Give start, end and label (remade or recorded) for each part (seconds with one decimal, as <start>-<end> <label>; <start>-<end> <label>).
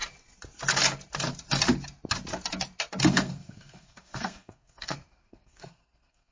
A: 0.0-3.0 recorded; 3.0-6.3 remade